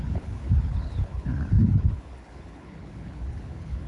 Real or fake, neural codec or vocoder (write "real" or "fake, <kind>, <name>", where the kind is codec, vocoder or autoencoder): fake, codec, HILCodec